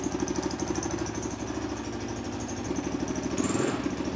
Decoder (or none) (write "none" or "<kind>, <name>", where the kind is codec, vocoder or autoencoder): none